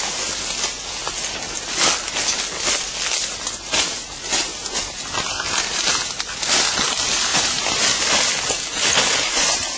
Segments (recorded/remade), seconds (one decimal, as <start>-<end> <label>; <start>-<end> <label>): 0.0-9.8 recorded